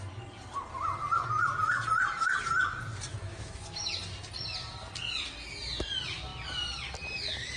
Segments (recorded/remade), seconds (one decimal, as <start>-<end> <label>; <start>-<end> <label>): 0.0-3.1 recorded; 3.1-3.9 remade; 3.9-7.6 recorded